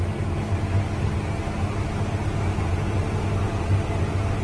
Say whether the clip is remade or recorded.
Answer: recorded